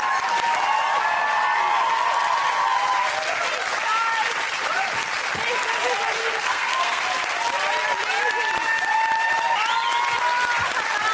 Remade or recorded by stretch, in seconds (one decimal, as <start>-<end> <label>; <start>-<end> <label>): 0.0-6.2 recorded; 6.2-7.0 remade; 7.0-11.1 recorded